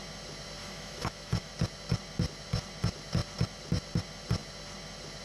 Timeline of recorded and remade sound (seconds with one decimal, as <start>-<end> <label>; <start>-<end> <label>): 0.0-0.6 recorded; 0.6-1.5 remade; 1.5-5.2 recorded